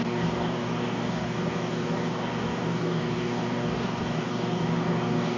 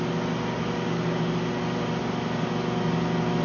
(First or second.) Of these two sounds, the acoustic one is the second